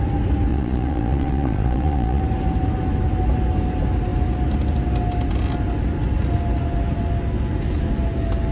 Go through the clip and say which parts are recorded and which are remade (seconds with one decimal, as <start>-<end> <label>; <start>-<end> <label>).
0.0-0.5 recorded; 0.5-2.2 remade; 2.2-8.5 recorded